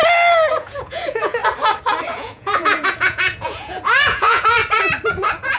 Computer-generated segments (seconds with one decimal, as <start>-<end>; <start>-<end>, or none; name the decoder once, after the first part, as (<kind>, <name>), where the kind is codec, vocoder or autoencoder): 0.5-1.4 (vocoder, Vocos); 2.1-4.6; 5.1-5.6